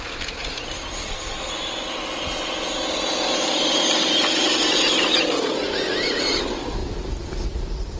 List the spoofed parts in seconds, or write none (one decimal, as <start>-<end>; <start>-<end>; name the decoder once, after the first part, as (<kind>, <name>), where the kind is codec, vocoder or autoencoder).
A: 1.0-1.5 (codec, SNAC)